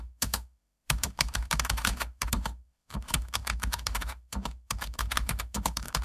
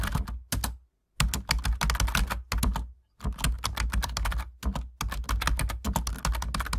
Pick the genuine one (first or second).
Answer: second